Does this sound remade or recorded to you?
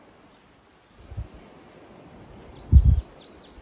recorded